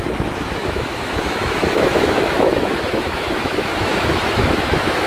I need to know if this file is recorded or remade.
remade